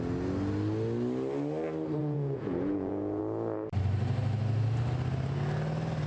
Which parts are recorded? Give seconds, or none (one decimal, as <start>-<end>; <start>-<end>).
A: 0.0-2.0; 3.2-6.1